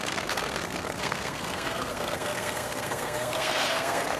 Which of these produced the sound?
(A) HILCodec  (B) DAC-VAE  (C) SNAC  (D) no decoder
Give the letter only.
C